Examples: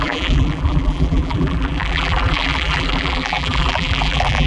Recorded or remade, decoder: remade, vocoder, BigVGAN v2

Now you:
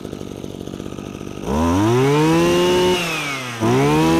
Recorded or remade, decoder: recorded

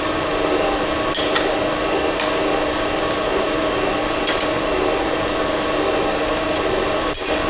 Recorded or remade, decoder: recorded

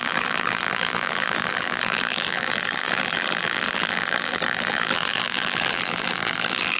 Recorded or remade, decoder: remade, vocoder, BigVGAN v2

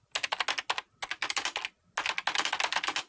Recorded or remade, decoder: recorded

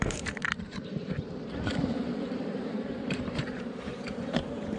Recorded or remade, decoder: remade, vocoder, BigVGAN v2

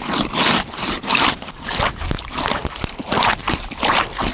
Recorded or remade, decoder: recorded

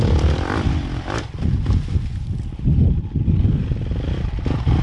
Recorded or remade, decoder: recorded